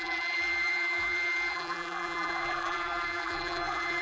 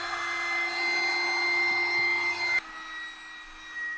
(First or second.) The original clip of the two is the second